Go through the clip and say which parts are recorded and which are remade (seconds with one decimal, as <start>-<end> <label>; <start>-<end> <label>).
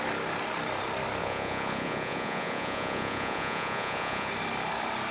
0.0-1.2 recorded; 1.2-4.3 remade; 4.3-5.1 recorded